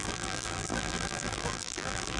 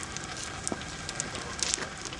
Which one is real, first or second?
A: second